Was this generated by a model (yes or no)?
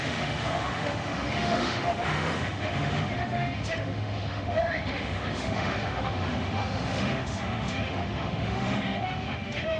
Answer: yes